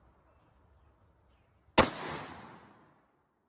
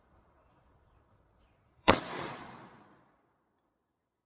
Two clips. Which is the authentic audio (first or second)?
first